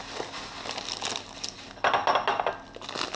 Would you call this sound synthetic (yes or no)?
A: no